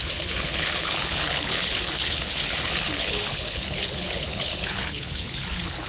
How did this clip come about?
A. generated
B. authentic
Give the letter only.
A